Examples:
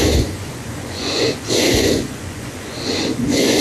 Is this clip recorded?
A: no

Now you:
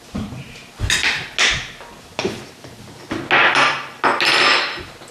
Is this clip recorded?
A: yes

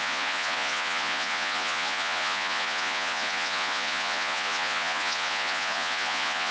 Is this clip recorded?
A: no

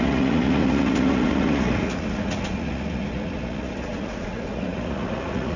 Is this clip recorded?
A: no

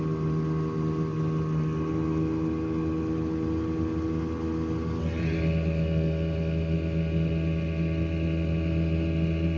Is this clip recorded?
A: yes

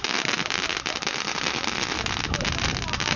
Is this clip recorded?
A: yes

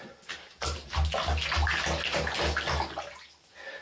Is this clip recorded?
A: yes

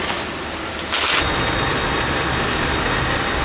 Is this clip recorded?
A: yes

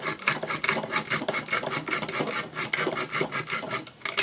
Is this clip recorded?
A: yes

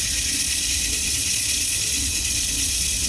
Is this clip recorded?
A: no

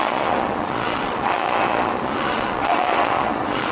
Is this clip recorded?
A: no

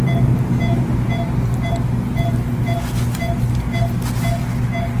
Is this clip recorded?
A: yes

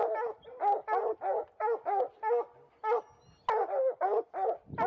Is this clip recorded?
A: yes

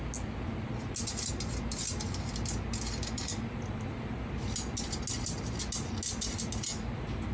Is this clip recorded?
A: yes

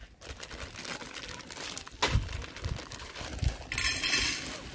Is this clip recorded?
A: yes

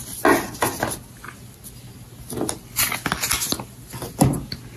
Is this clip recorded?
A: yes